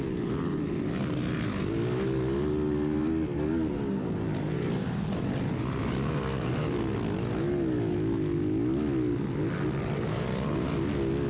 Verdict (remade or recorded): recorded